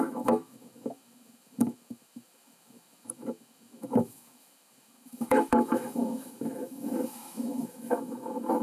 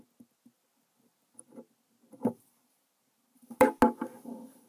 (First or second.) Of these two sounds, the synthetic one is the first